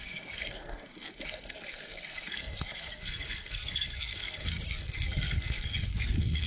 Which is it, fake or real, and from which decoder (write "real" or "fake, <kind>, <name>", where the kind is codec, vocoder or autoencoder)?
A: fake, codec, SNAC